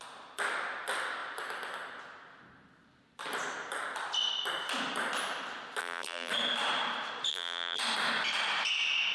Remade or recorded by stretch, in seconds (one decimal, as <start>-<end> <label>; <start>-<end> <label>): 0.0-5.8 recorded; 5.8-6.3 remade; 6.3-7.3 recorded; 7.3-7.8 remade; 7.8-9.1 recorded